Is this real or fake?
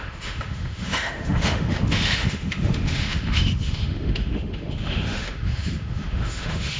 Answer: fake